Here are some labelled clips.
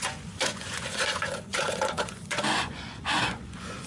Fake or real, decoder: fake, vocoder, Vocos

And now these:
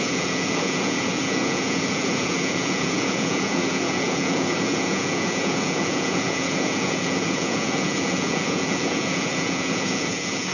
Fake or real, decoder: fake, vocoder, Vocos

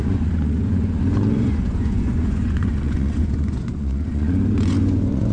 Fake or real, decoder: fake, vocoder, Vocos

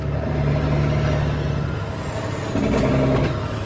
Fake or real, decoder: real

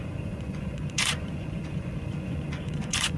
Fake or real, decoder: fake, vocoder, Vocos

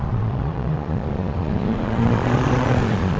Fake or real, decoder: fake, vocoder, Vocos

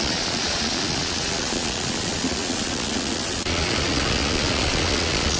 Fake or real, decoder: fake, vocoder, Vocos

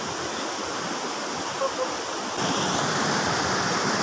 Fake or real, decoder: real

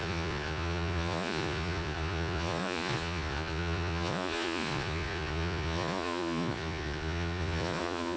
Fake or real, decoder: fake, vocoder, Vocos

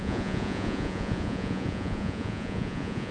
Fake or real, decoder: fake, vocoder, Vocos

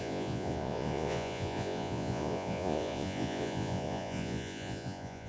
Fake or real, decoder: fake, vocoder, Vocos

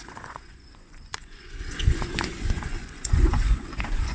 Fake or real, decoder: fake, vocoder, Vocos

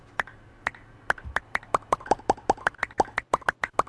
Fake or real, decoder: real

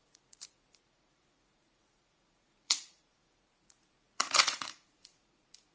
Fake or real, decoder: fake, vocoder, Vocos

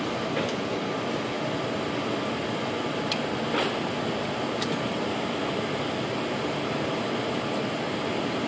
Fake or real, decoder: real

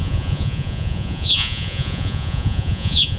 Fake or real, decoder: fake, vocoder, Vocos